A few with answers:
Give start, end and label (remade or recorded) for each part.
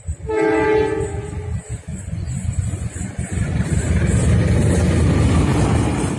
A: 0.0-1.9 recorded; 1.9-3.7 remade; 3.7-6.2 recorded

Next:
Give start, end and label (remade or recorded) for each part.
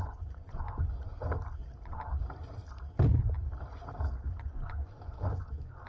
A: 0.0-1.1 remade; 1.1-4.3 recorded; 4.3-5.9 remade